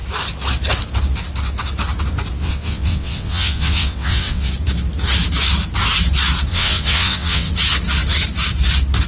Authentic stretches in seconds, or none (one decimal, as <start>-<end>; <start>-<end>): 0.0-2.4; 4.5-6.5; 7.5-9.1